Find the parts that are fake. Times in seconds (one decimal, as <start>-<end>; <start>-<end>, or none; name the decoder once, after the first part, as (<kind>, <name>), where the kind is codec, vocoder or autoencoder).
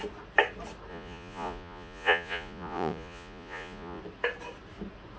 0.9-4.0 (vocoder, Vocos)